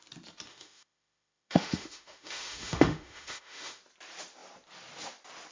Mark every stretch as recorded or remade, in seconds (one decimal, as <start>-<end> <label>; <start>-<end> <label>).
0.0-0.5 recorded; 0.5-3.8 remade; 3.8-5.5 recorded

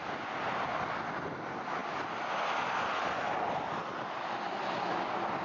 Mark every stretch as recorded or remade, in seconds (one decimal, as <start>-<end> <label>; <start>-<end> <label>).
0.0-5.4 recorded

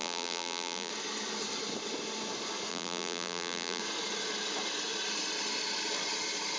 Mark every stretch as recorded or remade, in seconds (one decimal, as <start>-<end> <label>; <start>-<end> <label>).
0.0-0.9 remade; 0.9-2.7 recorded; 2.7-3.8 remade; 3.8-6.6 recorded